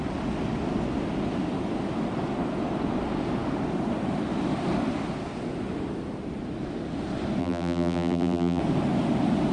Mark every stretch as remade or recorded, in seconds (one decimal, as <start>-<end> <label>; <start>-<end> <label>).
0.0-7.4 recorded; 7.4-8.6 remade; 8.6-9.5 recorded